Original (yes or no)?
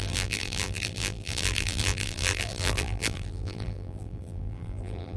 no